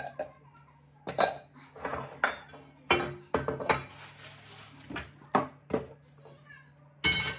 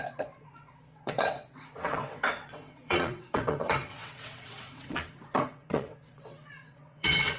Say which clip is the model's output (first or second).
second